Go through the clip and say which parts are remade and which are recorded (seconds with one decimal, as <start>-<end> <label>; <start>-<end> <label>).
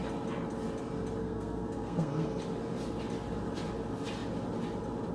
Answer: 0.0-1.2 recorded; 1.2-2.4 remade; 2.4-5.1 recorded